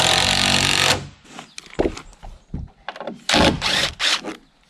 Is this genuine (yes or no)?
yes